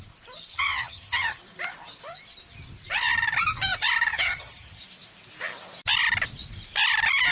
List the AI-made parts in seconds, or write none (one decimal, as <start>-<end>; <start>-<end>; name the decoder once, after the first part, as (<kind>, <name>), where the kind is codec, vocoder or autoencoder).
0.5-1.4 (vocoder, HiFi-GAN); 4.1-4.8